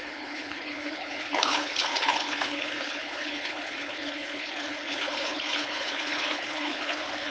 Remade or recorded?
remade